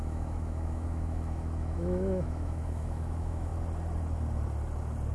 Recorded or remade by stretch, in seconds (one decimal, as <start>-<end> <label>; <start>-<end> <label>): 0.0-3.5 remade; 3.5-5.1 recorded

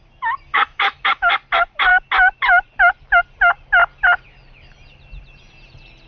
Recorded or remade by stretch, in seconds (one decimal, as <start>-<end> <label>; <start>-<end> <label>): 0.0-0.5 recorded; 0.5-1.3 remade; 1.3-6.1 recorded

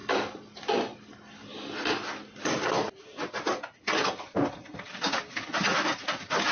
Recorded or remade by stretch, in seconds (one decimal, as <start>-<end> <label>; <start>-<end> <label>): 0.0-6.5 recorded